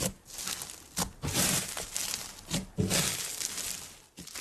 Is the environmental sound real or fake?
real